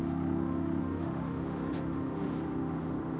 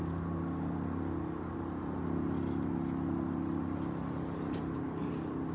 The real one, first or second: second